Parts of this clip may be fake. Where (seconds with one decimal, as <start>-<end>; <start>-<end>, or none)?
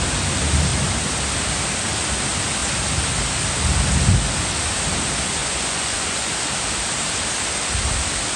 5.4-6.4